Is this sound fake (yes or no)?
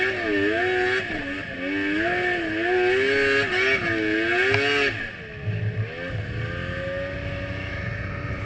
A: no